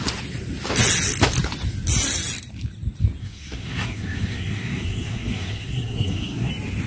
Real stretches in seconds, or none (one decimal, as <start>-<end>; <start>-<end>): 0.0-3.2; 6.5-6.9